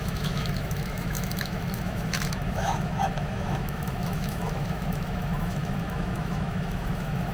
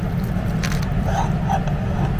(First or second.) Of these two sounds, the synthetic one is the first